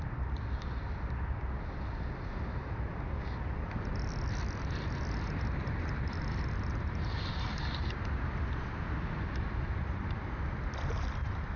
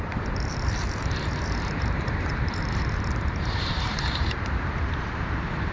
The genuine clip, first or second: first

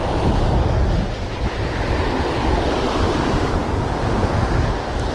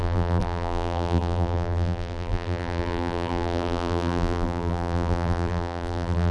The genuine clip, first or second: first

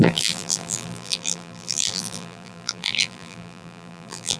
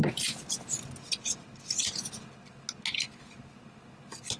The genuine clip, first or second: second